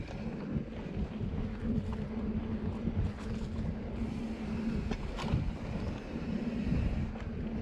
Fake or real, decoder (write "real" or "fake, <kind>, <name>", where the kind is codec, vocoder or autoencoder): real